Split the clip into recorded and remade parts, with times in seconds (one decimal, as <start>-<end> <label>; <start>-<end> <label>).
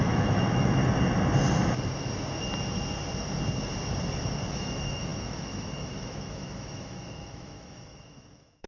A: 0.0-0.8 remade; 0.8-4.5 recorded; 4.5-8.7 remade